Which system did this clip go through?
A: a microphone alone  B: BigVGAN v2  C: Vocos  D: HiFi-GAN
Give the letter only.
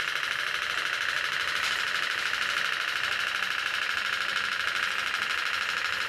B